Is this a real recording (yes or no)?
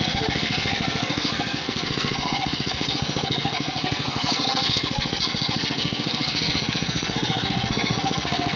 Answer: no